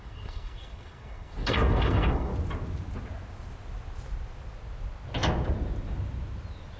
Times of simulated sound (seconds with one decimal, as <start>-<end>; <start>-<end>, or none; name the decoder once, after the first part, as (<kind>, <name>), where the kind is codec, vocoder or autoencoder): 0.0-2.3 (codec, SNAC)